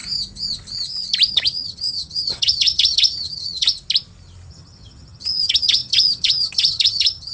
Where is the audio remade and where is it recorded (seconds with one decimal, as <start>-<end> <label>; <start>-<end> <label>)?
0.0-1.3 recorded; 1.3-3.7 remade; 3.7-4.5 recorded; 4.5-7.3 remade